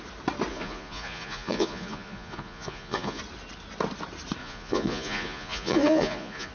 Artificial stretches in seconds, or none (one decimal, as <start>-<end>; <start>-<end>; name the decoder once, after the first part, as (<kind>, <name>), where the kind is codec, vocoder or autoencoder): 0.5-3.2 (vocoder, Vocos); 4.4-6.5